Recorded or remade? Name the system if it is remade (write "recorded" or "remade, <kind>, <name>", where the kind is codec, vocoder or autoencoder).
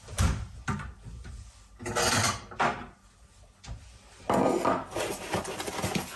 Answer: recorded